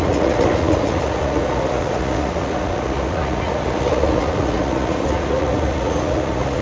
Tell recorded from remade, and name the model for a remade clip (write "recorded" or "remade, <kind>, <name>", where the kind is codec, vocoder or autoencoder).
remade, vocoder, Vocos